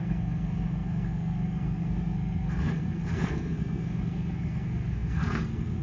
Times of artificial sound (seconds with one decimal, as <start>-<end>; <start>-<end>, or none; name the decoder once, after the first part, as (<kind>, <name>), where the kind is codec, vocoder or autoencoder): 0.0-5.8 (codec, SNAC)